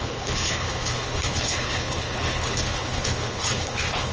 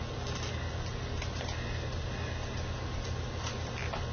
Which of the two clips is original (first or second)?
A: second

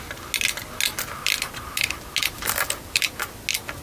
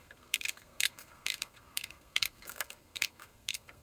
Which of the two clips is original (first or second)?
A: first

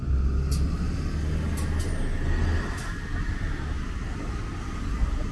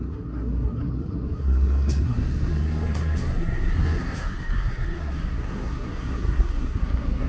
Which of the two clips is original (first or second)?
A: first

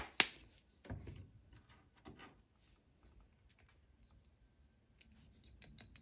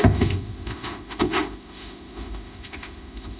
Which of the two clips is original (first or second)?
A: first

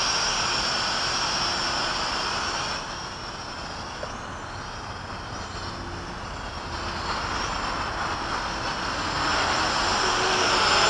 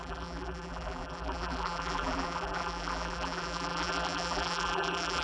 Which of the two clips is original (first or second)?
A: first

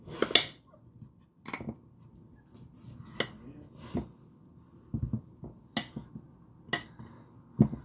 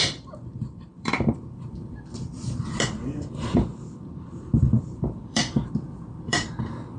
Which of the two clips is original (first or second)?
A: first